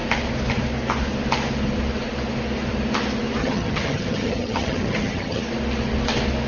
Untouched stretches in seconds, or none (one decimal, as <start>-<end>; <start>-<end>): 0.0-3.4; 5.4-6.5